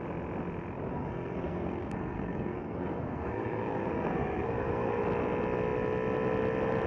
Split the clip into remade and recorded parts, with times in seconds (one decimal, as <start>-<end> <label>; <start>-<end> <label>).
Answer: 0.0-0.9 recorded; 0.9-5.0 remade; 5.0-6.9 recorded